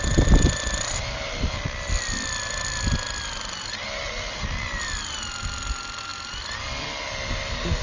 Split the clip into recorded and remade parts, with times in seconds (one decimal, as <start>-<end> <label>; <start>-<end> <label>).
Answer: 0.0-7.8 recorded